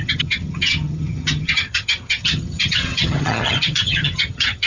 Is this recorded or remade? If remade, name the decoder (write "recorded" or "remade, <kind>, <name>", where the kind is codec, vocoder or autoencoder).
remade, vocoder, HiFi-GAN